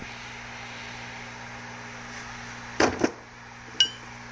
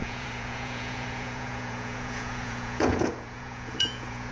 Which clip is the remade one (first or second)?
second